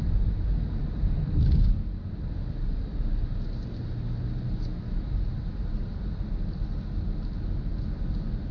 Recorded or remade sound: recorded